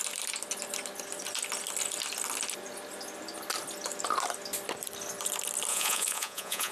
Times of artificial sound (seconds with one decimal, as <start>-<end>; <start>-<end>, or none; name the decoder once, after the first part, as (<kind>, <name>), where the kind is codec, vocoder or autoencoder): 5.7-6.7 (vocoder, Vocos)